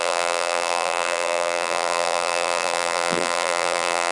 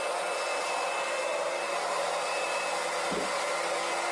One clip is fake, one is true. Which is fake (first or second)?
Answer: first